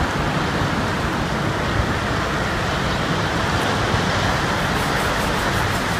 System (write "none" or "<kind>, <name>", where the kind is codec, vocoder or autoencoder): none